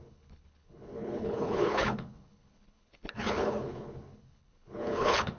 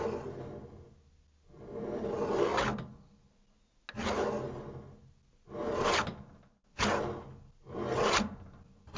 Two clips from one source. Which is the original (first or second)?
second